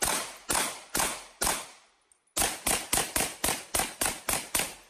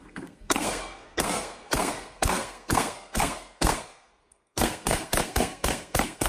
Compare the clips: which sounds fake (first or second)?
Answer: second